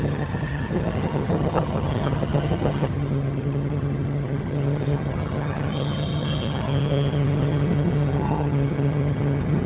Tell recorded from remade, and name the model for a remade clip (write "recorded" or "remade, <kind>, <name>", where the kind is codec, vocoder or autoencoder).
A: remade, vocoder, HiFi-GAN